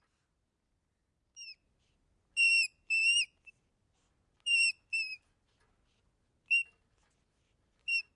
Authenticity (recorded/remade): recorded